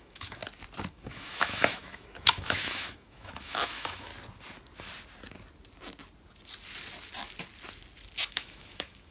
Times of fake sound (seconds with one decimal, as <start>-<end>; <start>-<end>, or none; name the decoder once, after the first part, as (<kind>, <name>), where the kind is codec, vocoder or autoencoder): 0.0-0.4 (autoencoder, DAC-VAE); 0.9-4.1; 8.3-9.1